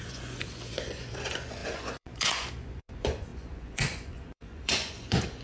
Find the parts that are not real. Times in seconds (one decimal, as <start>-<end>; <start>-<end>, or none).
0.0-5.4